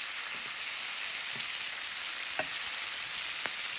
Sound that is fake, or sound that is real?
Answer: real